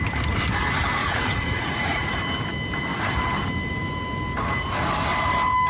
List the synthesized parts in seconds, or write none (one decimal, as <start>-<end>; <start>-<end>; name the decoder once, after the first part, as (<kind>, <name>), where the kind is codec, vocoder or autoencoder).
1.0-2.1 (vocoder, Vocos)